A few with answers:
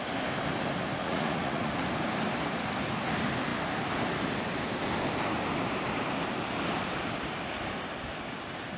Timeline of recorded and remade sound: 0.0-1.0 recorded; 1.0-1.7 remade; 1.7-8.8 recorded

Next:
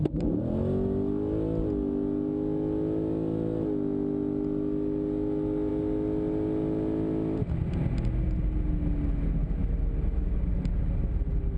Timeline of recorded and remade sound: 0.0-11.6 recorded

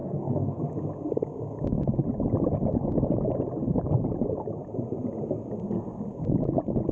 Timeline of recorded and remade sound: 0.0-0.6 remade; 0.6-6.9 recorded

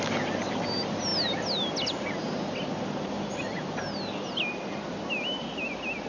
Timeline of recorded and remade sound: 0.0-6.1 recorded

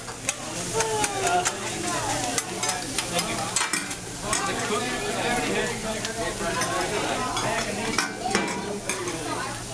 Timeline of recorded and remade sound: 0.0-3.7 recorded; 3.7-5.0 remade; 5.0-5.8 recorded; 5.8-7.2 remade; 7.2-8.4 recorded; 8.4-9.0 remade; 9.0-9.7 recorded

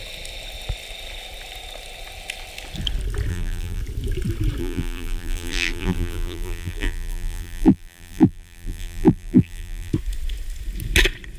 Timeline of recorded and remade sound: 0.0-3.3 recorded; 3.3-3.8 remade; 3.8-4.6 recorded; 4.6-9.9 remade; 9.9-11.4 recorded